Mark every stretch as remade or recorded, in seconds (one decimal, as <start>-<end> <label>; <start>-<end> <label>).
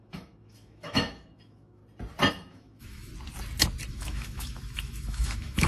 0.0-1.8 remade; 1.8-2.3 recorded; 2.3-3.1 remade; 3.1-3.9 recorded; 3.9-5.7 remade